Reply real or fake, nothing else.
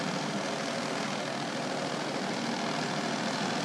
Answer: real